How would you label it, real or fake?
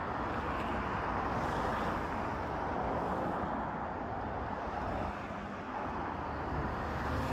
real